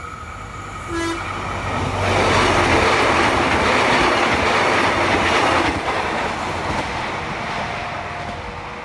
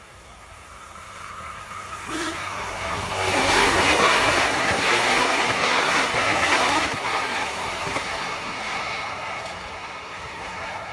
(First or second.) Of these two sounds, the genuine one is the first